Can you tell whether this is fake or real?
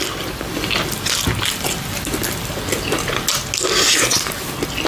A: real